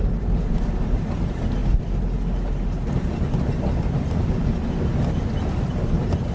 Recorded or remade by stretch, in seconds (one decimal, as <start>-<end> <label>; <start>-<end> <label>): 0.0-6.3 recorded